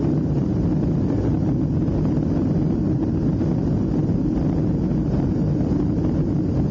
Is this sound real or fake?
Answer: real